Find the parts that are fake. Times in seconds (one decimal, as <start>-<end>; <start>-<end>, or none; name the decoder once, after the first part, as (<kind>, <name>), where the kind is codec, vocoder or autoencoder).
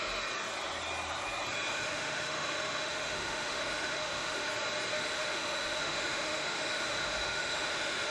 1.7-4.5 (autoencoder, DAC-VAE); 4.9-8.1